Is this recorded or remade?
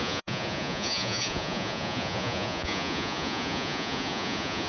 remade